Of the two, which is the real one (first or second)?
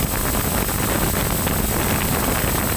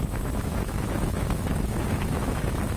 first